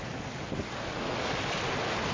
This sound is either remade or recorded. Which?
recorded